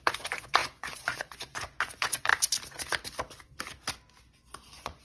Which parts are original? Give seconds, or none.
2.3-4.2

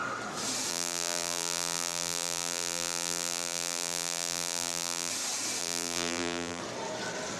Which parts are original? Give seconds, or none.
0.0-0.7; 5.1-5.6; 6.6-7.4

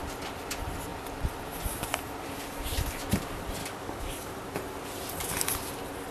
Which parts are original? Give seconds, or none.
0.0-3.6; 4.3-6.1